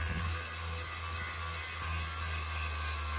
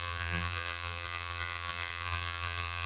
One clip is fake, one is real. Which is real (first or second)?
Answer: first